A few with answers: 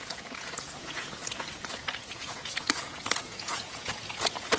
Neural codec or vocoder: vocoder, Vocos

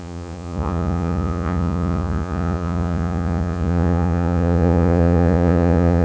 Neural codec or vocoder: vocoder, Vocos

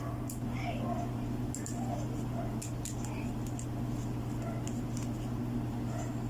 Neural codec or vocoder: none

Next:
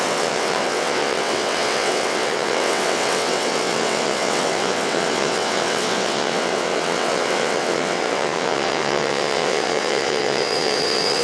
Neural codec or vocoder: vocoder, WaveNeXt